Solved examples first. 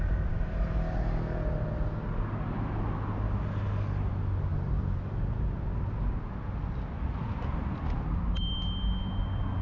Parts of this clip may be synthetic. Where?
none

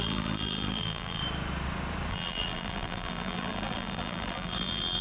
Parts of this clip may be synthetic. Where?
0.0-1.2 (vocoder, BigVGAN v2); 2.1-5.0

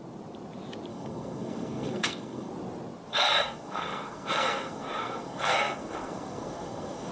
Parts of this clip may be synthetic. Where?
0.9-2.5 (codec, SNAC); 3.1-7.1